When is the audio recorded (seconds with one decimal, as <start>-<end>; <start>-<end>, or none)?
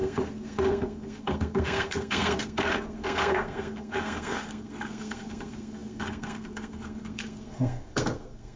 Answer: none